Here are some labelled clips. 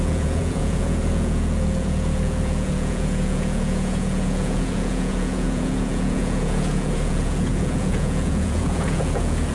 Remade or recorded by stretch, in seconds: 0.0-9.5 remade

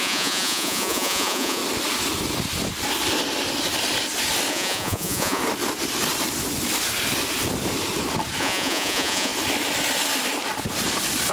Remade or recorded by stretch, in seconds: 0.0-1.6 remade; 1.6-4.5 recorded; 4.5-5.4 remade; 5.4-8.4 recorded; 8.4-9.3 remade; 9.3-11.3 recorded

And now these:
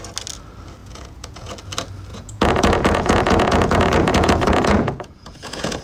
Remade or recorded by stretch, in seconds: 0.0-0.8 recorded; 0.8-1.5 remade; 1.5-2.1 recorded; 2.1-5.8 remade